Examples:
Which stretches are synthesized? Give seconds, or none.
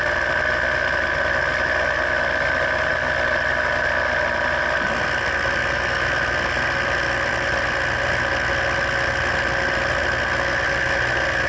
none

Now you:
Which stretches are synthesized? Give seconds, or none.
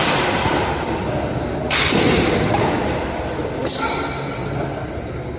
none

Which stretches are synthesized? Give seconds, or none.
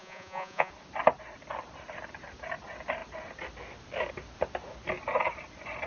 0.0-0.7 (vocoder, Vocos)